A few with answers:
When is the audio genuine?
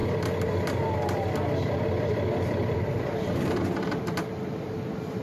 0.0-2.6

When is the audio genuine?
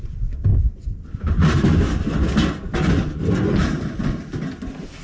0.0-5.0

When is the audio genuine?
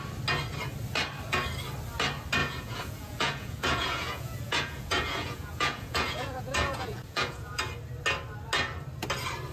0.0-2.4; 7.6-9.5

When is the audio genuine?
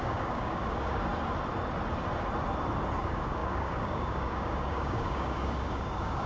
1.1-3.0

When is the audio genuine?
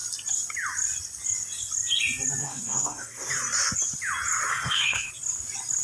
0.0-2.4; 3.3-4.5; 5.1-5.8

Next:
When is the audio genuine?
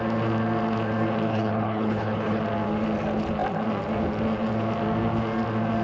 0.0-1.3; 2.4-5.8